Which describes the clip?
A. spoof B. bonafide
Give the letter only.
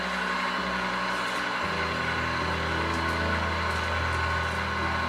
B